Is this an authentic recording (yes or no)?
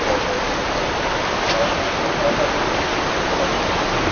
yes